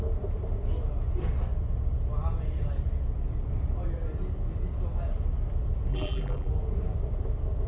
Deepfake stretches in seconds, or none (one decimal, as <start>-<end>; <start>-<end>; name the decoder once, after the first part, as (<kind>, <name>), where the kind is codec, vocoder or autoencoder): 5.9-6.5 (vocoder, BigVGAN v2)